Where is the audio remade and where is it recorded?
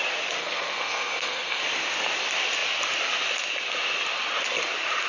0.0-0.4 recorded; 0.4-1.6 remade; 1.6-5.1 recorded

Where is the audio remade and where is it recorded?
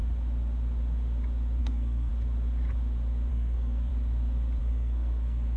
0.0-1.6 recorded; 1.6-2.1 remade; 2.1-3.3 recorded; 3.3-3.9 remade; 3.9-4.6 recorded; 4.6-5.6 remade